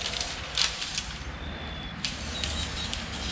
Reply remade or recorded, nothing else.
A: recorded